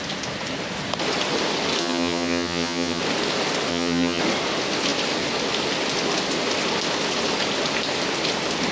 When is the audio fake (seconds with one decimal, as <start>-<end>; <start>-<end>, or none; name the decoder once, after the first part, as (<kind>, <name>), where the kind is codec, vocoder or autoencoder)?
1.8-3.0 (vocoder, HiFi-GAN); 3.7-4.2